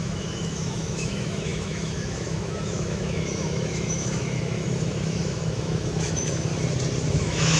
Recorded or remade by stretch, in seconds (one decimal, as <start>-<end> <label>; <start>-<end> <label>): 0.0-6.5 remade; 6.5-7.1 recorded; 7.1-7.6 remade

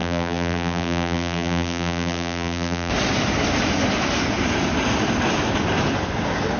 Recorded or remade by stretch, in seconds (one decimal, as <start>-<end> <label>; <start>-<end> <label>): 0.0-2.9 remade; 2.9-6.6 recorded